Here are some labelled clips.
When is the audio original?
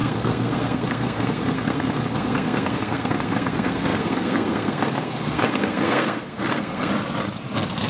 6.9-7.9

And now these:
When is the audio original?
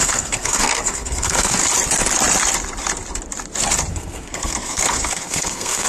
1.6-3.9